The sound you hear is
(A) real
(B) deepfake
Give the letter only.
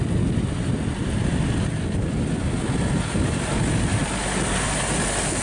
A